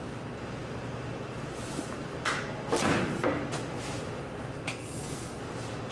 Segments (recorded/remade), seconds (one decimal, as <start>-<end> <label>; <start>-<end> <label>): 0.0-4.7 recorded; 4.7-5.4 remade; 5.4-5.9 recorded